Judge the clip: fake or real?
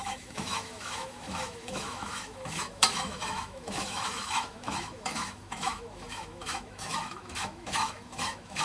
fake